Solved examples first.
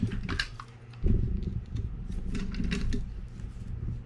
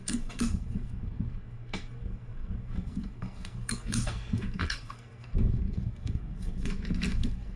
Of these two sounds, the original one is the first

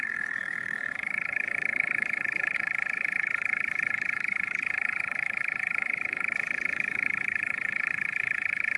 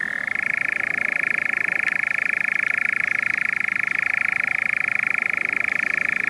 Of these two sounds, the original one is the second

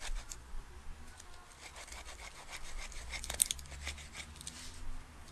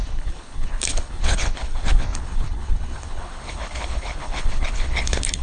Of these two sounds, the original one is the first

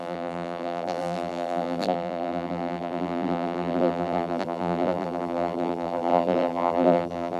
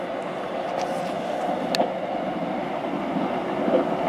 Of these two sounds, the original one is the second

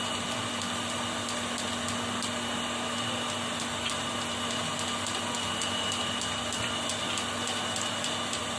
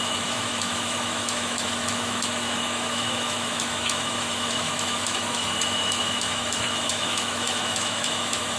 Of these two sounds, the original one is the first